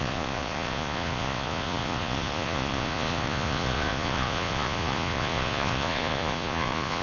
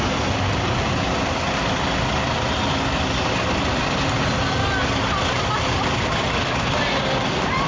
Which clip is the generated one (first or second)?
first